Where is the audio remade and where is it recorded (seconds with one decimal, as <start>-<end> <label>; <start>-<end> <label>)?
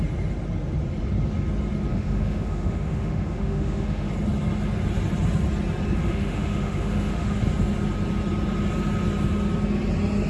0.0-1.9 recorded; 1.9-4.1 remade; 4.1-6.0 recorded; 6.0-7.4 remade; 7.4-10.3 recorded